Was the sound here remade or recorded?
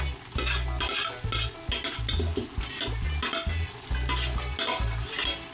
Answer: recorded